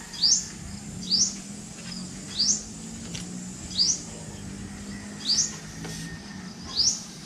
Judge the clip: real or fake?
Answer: real